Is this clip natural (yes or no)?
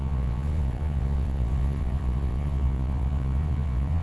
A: no